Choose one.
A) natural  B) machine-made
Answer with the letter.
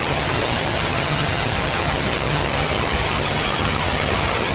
B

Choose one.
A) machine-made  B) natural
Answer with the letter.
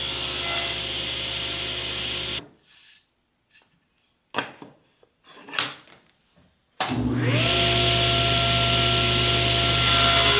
B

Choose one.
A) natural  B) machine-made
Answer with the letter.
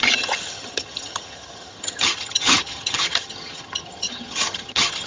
B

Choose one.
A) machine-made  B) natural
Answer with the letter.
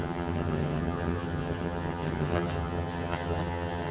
A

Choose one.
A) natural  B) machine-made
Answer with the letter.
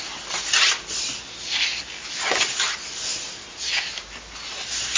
A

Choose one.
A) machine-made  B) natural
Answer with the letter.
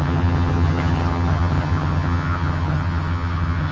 A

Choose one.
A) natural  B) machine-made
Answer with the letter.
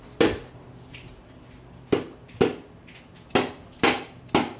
A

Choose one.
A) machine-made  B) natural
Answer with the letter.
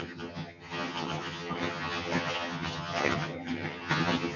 A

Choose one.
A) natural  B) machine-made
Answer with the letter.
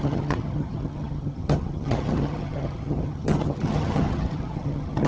B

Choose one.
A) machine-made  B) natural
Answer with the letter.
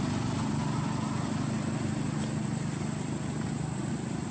B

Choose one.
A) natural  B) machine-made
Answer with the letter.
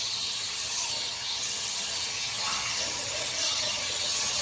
B